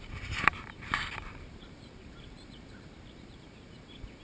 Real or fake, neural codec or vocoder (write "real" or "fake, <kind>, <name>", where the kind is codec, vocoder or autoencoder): fake, vocoder, BigVGAN v2